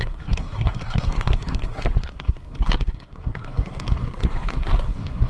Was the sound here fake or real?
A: fake